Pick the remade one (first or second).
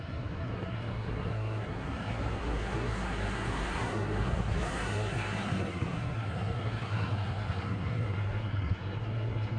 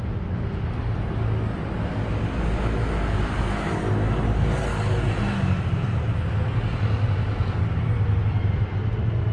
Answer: first